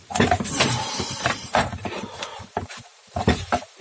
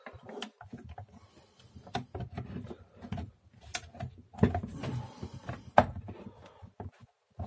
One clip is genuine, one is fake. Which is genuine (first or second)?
second